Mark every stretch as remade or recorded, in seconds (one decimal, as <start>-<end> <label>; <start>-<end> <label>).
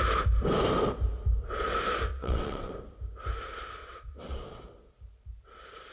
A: 0.0-2.1 recorded; 2.1-2.7 remade; 2.7-3.8 recorded; 3.8-4.7 remade; 4.7-5.9 recorded